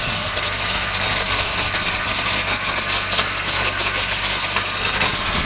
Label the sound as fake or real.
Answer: fake